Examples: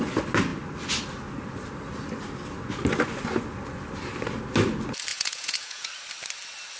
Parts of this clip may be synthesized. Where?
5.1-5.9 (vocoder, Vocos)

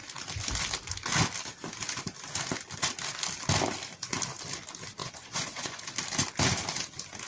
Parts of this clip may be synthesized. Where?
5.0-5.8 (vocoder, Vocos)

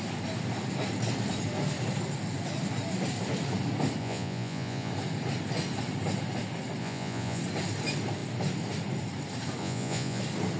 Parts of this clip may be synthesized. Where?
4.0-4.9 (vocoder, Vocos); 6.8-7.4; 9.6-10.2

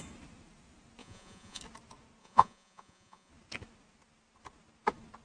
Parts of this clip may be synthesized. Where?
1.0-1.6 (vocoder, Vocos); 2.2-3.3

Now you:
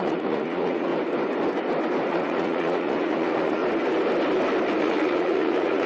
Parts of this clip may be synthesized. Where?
0.0-0.9 (vocoder, Vocos); 2.1-3.6; 4.8-5.9

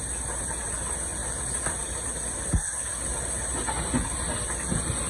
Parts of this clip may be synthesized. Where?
none

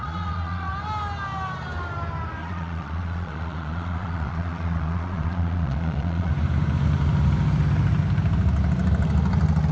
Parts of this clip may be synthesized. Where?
0.0-0.7 (vocoder, Vocos); 2.4-6.3